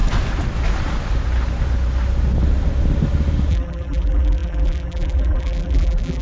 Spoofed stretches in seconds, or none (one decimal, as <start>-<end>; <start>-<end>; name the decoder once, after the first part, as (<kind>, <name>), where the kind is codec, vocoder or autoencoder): 3.5-6.2 (vocoder, BigVGAN v2)